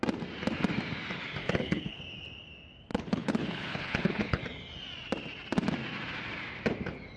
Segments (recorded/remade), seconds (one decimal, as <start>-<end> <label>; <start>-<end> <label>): 0.0-1.4 recorded; 1.4-2.0 remade; 2.0-2.9 recorded; 2.9-4.4 remade; 4.4-7.2 recorded